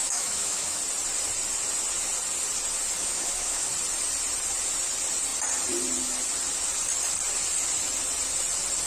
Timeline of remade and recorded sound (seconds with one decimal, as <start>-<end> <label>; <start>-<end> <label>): 0.0-0.8 remade; 0.8-3.0 recorded; 3.0-3.7 remade; 3.7-8.9 recorded